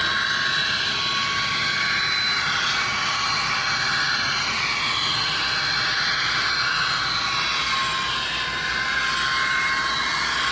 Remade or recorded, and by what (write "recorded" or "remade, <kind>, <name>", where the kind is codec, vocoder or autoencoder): recorded